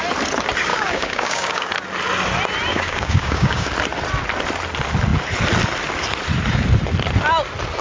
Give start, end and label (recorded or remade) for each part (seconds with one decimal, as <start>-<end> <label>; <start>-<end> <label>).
0.0-0.7 recorded; 0.7-1.7 remade; 1.7-2.7 recorded; 2.7-3.7 remade; 3.7-7.8 recorded